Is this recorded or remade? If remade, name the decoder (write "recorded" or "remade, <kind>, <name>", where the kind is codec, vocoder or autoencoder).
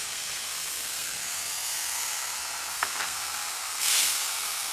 remade, codec, SNAC